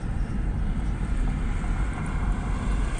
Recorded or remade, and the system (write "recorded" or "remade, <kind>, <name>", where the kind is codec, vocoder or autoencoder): recorded